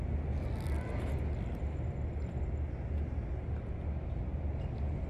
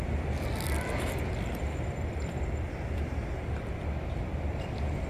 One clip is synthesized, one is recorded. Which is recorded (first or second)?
first